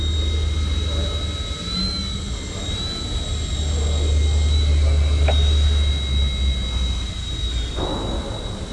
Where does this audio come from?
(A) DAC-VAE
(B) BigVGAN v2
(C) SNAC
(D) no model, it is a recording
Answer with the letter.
D